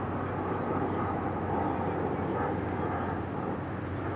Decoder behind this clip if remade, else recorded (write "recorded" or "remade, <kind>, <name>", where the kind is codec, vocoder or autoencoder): recorded